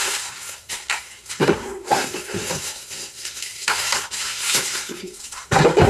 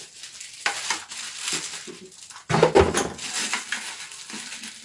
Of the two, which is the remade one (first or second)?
first